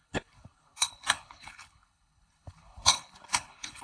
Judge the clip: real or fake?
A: fake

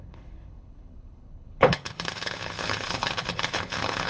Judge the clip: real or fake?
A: fake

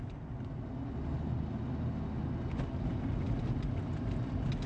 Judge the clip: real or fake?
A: real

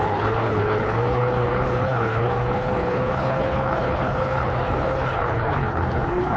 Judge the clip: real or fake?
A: fake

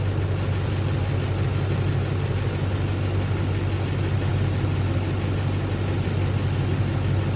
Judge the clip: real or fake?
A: real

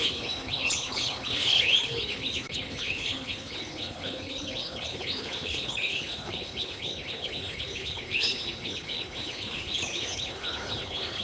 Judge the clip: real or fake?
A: fake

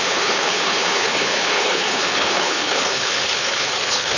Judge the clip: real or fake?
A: fake